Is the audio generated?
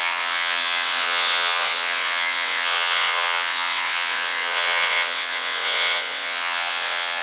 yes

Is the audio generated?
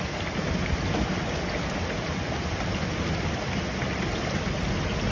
no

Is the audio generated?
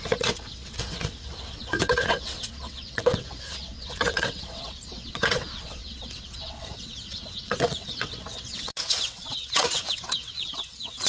yes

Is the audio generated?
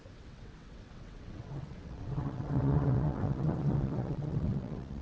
yes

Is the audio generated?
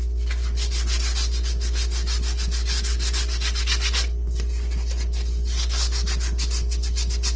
no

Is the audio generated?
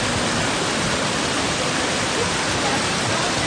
no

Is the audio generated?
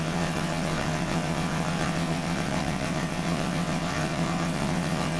yes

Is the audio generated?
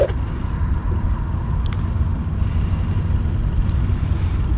no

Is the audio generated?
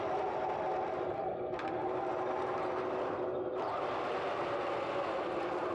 no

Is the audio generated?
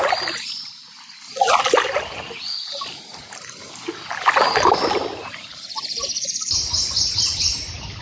no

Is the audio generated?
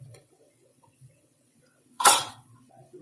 yes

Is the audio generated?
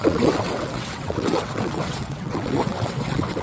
yes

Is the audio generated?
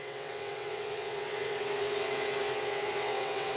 yes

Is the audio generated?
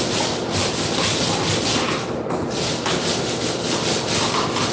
no